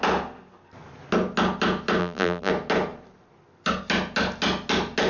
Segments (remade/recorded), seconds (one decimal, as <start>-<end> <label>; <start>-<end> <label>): 0.0-2.0 recorded; 2.0-2.5 remade; 2.5-5.1 recorded